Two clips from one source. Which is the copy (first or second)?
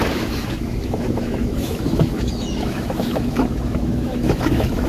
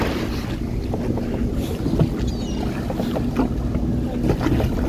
first